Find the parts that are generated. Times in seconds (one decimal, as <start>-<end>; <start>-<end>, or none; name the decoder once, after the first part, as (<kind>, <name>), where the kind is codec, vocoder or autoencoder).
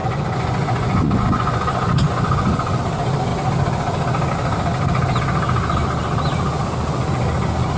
0.0-2.8 (vocoder, Vocos)